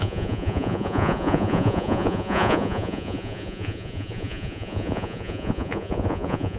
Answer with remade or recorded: remade